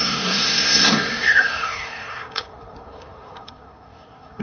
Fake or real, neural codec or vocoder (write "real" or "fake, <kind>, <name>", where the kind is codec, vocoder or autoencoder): fake, codec, SNAC